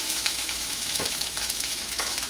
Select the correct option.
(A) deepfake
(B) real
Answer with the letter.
A